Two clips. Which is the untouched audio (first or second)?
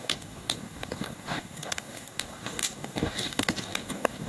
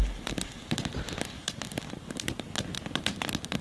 second